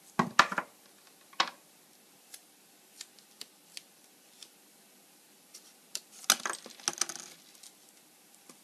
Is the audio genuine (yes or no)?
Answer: yes